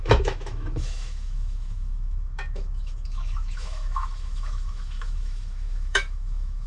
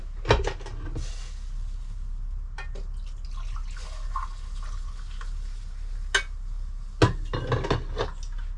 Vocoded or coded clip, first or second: first